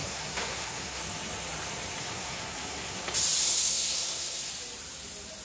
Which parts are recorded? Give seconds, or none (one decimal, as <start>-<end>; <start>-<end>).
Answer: 1.0-2.0; 3.0-3.4; 4.5-5.4